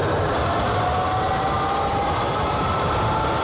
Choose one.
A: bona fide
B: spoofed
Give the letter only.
A